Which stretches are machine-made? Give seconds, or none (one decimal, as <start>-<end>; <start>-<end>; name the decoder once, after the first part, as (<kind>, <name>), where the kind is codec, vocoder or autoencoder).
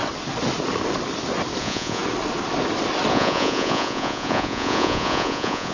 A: 1.6-2.0 (vocoder, Vocos); 3.1-5.7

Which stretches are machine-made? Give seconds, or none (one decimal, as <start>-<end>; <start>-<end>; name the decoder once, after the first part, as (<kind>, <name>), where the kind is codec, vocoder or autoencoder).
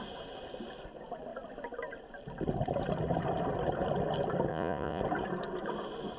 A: 4.5-5.0 (vocoder, Vocos)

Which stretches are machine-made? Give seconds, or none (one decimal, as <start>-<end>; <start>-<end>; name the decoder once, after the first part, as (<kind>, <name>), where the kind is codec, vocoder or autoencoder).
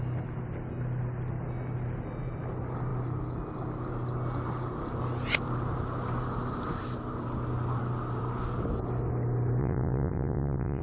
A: 9.6-10.8 (vocoder, WaveNeXt)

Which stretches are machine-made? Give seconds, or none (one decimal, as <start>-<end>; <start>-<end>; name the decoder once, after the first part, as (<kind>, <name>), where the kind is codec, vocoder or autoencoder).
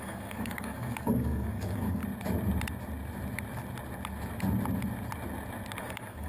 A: 0.0-2.0 (codec, DAC); 5.8-6.3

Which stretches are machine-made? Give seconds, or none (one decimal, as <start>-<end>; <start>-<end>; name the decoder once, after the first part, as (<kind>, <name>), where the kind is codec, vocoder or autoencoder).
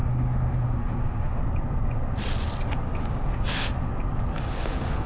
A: 0.0-1.4 (autoencoder, DAC-VAE); 3.0-3.9; 4.3-5.1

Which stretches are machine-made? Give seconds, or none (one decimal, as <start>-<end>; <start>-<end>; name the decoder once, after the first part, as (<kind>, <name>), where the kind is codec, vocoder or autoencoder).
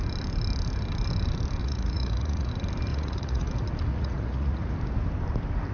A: 1.6-2.5 (vocoder, Vocos); 2.9-3.5; 3.9-4.7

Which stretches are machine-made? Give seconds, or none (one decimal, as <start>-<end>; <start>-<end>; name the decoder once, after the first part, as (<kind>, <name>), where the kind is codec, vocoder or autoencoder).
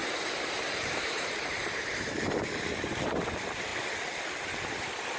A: 0.0-3.1 (vocoder, BigVGAN v2)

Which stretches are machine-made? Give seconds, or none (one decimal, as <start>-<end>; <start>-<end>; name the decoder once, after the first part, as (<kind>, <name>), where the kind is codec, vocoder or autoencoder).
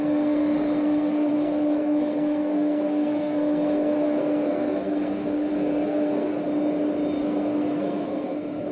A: 0.0-6.3 (codec, SNAC); 7.2-8.7